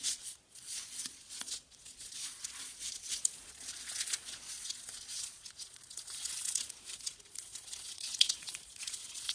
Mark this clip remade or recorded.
remade